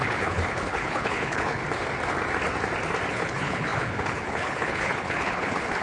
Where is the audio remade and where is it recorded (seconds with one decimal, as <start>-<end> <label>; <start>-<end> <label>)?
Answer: 0.0-1.6 remade; 1.6-3.1 recorded; 3.1-5.8 remade